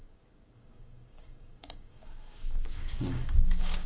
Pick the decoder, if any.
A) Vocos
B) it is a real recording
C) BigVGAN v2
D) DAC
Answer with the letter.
D